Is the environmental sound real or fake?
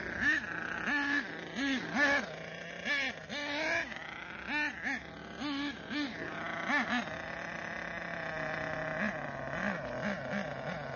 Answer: real